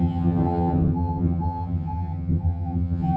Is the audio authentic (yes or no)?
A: no